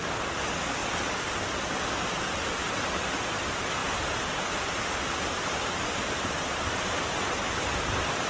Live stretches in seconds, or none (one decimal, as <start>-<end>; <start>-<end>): 0.0-8.3